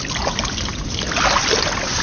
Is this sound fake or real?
real